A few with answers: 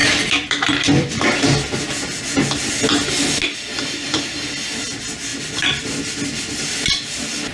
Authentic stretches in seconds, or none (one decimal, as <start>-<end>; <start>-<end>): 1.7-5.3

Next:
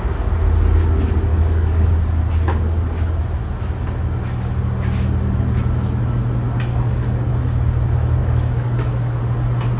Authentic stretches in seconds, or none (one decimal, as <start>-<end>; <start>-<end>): 0.0-1.3; 1.9-6.7; 7.3-8.2; 9.2-9.8

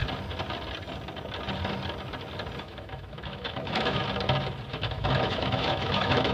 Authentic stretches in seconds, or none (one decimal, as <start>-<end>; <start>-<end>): 0.0-2.6; 4.0-4.7